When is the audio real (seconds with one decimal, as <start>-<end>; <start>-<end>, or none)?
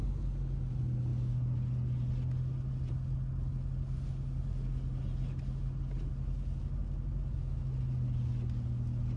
0.0-9.2